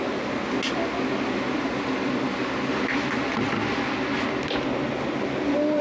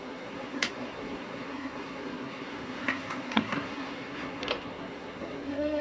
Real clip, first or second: first